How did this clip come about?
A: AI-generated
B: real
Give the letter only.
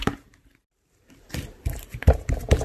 A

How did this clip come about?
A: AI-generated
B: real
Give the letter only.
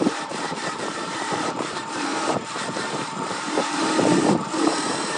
A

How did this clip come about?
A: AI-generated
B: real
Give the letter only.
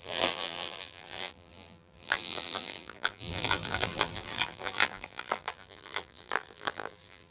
A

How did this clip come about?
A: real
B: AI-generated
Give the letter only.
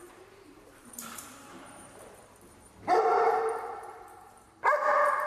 B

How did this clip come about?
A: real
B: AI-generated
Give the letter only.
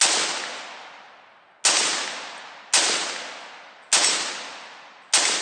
A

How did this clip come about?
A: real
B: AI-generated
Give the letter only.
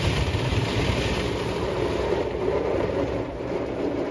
B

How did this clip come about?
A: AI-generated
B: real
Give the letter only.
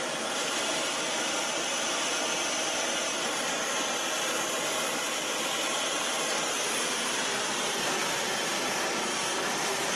A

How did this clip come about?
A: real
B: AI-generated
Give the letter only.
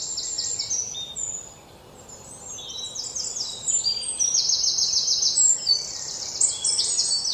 A